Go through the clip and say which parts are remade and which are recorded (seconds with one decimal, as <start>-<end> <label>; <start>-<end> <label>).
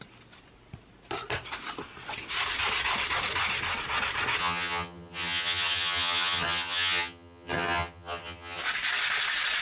0.0-4.4 recorded; 4.4-8.6 remade; 8.6-9.6 recorded